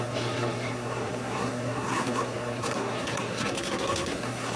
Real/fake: fake